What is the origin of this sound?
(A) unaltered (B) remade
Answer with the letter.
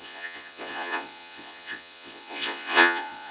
B